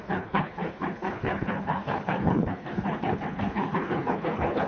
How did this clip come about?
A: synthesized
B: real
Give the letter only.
A